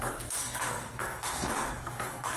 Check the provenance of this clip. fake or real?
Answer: fake